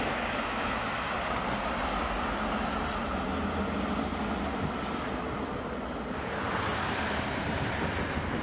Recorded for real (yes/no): yes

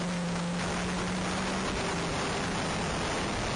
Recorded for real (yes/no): yes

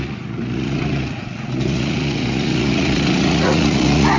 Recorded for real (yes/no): no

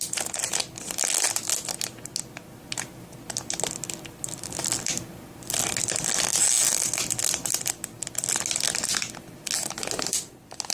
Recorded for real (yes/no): yes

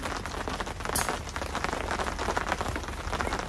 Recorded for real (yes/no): yes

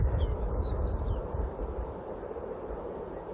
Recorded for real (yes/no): yes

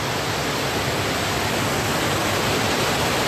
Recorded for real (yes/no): yes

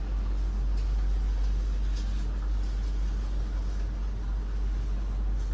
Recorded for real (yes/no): yes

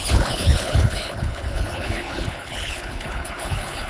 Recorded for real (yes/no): no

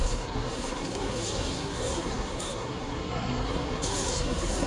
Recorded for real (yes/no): no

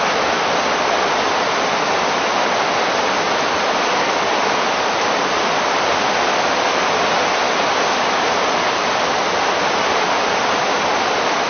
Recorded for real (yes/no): yes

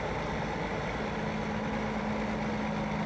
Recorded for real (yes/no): yes